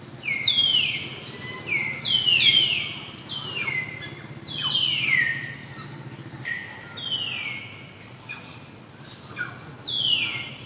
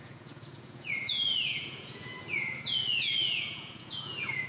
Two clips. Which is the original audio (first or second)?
first